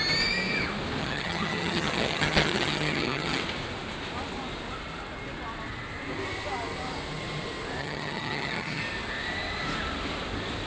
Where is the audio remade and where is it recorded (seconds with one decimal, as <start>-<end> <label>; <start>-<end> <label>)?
0.0-1.0 recorded; 1.0-3.4 remade; 3.4-7.8 recorded; 7.8-8.8 remade; 8.8-10.7 recorded